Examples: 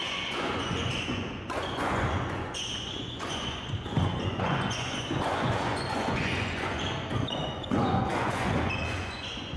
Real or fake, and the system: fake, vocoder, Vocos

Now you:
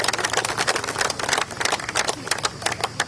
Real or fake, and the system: real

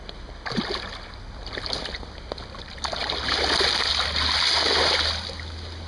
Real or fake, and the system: real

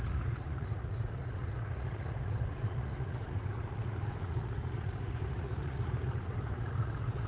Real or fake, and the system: fake, vocoder, Vocos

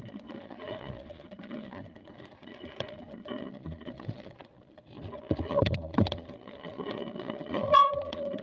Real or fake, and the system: fake, vocoder, Vocos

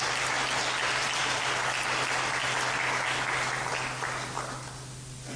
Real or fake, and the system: real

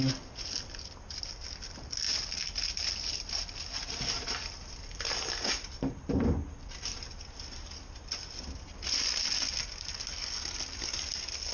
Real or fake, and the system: real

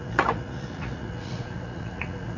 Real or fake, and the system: fake, vocoder, Vocos